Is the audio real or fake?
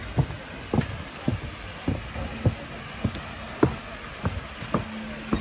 real